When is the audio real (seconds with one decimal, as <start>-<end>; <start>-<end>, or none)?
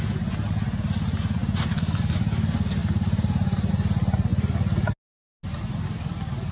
0.0-2.8; 3.7-6.5